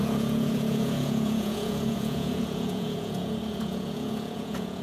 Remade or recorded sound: remade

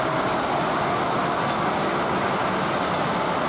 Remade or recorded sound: recorded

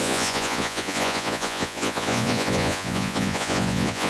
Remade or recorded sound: remade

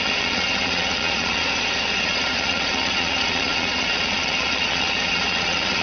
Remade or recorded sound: remade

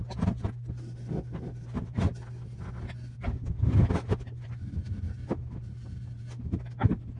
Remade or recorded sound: recorded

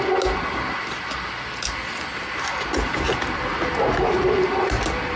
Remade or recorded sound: recorded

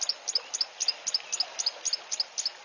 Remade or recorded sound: recorded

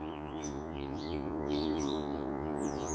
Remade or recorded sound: remade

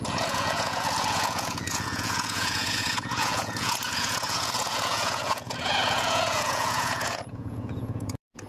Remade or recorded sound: remade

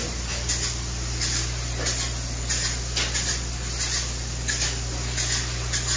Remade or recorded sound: recorded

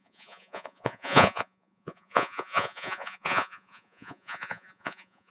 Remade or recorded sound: remade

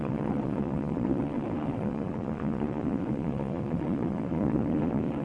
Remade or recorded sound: remade